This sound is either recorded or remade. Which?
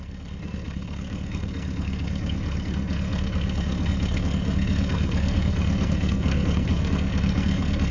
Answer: remade